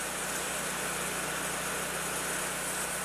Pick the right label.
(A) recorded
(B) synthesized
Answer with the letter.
A